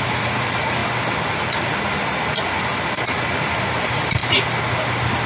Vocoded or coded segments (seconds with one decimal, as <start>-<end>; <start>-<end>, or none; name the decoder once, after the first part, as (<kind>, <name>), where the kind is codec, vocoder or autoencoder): 0.0-0.8 (vocoder, BigVGAN v2); 3.8-4.2